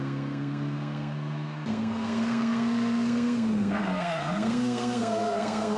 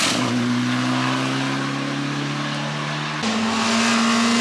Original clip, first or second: second